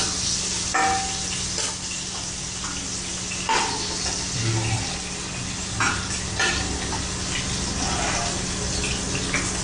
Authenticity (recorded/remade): recorded